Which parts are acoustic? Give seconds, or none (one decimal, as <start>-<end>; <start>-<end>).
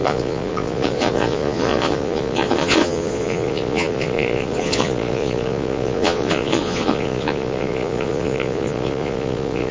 none